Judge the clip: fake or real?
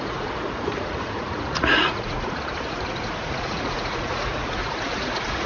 fake